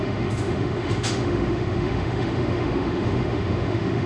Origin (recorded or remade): remade